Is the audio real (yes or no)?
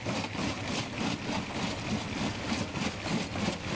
yes